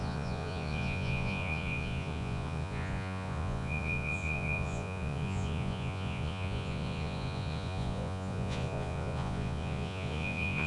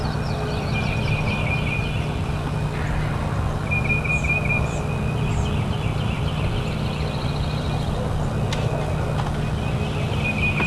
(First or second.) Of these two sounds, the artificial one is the first